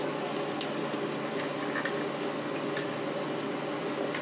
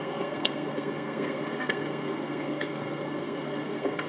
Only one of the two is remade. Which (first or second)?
second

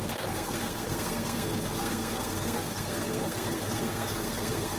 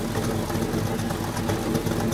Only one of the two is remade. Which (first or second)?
first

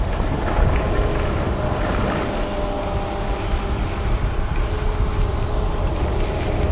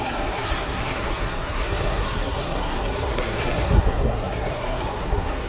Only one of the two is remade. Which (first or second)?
second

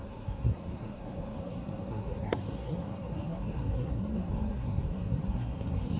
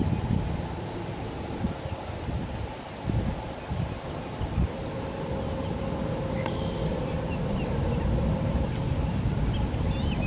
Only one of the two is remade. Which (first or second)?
first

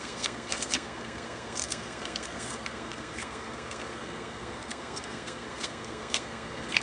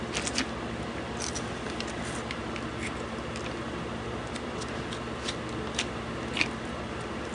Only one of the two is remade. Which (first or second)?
first